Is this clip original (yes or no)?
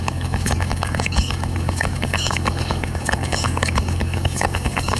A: no